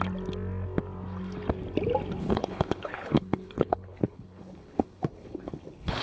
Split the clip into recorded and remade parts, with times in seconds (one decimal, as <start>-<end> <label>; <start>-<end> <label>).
0.0-2.2 recorded; 2.2-6.0 remade